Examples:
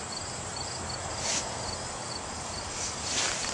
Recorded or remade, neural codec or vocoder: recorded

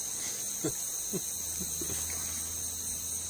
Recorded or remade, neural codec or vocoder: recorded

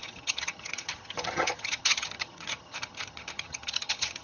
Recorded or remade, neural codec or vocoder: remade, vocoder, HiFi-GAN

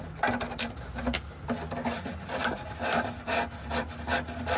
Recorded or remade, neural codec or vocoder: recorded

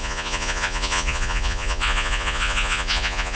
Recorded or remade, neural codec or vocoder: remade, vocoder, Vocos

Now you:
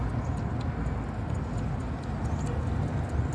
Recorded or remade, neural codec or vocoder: recorded